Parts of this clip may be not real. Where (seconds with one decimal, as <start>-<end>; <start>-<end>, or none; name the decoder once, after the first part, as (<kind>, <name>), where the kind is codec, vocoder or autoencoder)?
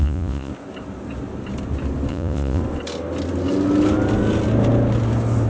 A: 0.0-0.5 (vocoder, Vocos); 2.1-2.6